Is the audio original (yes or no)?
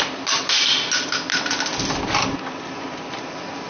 yes